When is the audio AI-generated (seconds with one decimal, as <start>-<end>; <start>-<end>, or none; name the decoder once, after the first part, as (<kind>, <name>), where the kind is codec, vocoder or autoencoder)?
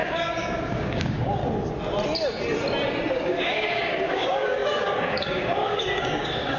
0.0-1.4 (codec, DAC); 3.1-6.6